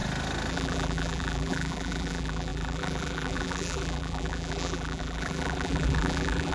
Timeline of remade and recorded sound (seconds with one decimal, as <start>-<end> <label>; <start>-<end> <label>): 0.0-0.5 recorded; 0.5-6.5 remade